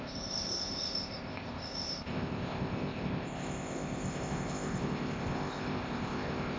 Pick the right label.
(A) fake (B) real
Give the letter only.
A